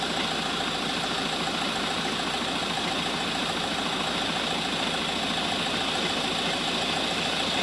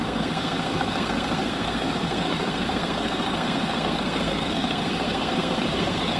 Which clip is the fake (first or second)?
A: second